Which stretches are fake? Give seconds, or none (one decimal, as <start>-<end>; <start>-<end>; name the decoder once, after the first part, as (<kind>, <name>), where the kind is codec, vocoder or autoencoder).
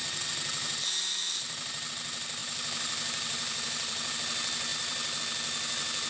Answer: 0.0-1.9 (vocoder, BigVGAN v2); 2.4-4.1; 4.7-5.2